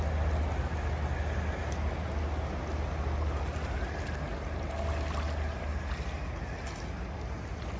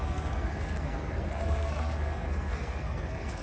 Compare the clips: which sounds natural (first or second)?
first